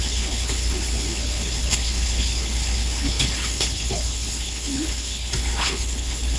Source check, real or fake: fake